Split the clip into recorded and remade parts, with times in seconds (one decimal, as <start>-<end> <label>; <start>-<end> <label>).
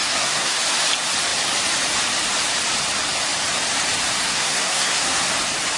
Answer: 0.0-0.6 remade; 0.6-4.2 recorded; 4.2-5.3 remade; 5.3-5.8 recorded